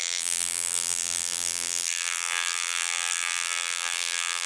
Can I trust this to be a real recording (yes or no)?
no